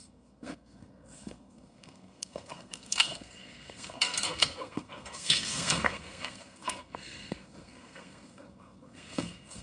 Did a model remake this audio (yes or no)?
yes